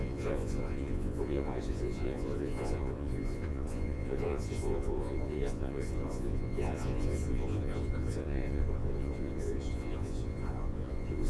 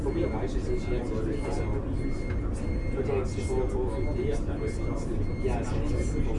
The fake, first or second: first